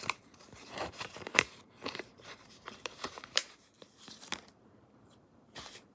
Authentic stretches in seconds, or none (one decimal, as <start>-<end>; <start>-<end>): none